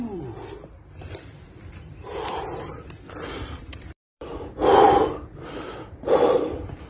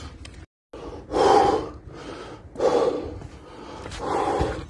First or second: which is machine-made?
first